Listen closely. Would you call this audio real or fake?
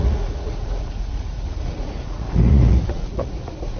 fake